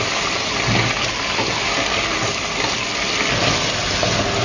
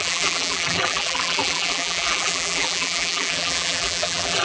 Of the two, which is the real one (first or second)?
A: first